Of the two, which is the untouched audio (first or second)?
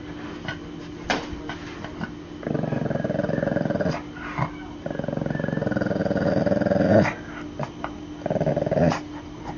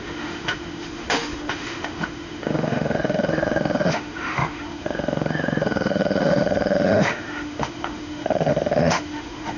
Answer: first